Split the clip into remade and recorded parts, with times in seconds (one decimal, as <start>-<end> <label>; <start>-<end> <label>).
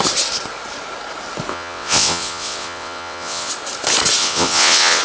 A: 0.0-1.5 recorded; 1.5-3.5 remade; 3.5-4.2 recorded; 4.2-5.0 remade